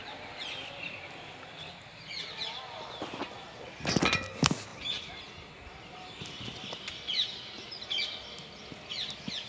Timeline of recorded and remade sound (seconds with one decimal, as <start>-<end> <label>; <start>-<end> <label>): 0.0-9.5 recorded